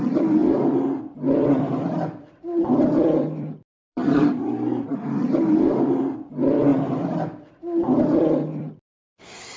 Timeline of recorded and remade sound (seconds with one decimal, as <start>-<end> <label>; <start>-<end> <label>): 0.0-0.4 remade; 0.4-1.3 recorded; 1.3-6.7 remade; 6.7-8.0 recorded; 8.0-9.6 remade